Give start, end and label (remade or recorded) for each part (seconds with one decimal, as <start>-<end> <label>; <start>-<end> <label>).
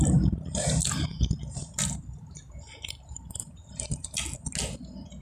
0.0-1.1 recorded; 1.1-4.2 remade; 4.2-5.2 recorded